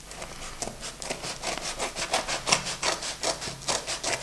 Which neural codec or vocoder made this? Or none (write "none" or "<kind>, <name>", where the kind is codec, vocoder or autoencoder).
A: none